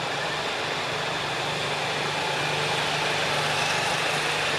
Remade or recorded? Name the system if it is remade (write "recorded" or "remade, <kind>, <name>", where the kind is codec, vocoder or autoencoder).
recorded